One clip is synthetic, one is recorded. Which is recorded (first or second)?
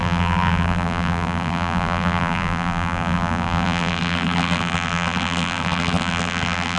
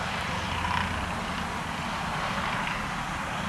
second